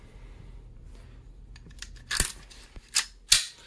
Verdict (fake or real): real